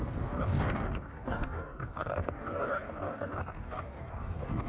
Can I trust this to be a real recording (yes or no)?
no